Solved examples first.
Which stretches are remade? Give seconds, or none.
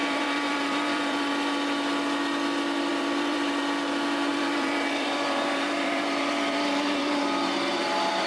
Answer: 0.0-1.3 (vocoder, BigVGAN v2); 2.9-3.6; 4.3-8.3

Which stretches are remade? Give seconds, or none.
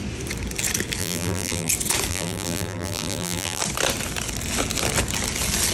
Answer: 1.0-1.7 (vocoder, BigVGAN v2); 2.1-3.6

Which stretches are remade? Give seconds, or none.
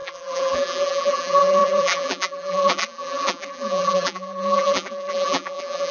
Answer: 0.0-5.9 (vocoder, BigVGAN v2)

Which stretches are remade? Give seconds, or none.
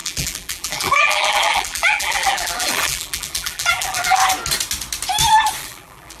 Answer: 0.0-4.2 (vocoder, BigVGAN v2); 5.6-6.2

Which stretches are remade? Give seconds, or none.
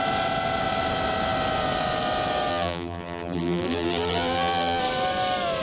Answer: 2.5-4.8 (vocoder, BigVGAN v2)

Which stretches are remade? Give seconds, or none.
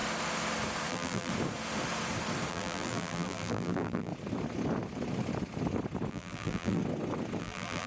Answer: 0.9-1.3 (vocoder, BigVGAN v2); 2.5-4.1; 6.1-6.8; 7.4-7.9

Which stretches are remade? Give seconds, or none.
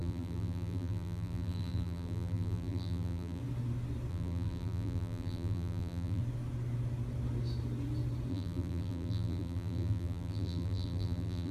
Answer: 0.0-3.4 (vocoder, BigVGAN v2); 4.1-6.2; 8.3-11.5